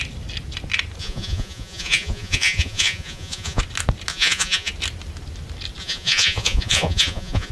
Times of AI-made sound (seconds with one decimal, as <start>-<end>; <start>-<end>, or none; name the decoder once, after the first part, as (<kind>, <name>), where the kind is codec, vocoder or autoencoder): 1.0-3.6 (vocoder, Vocos); 4.1-4.7; 5.8-7.5